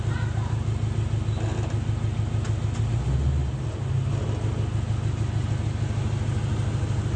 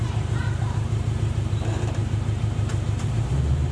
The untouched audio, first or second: first